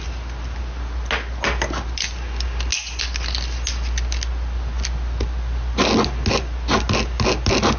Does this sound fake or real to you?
real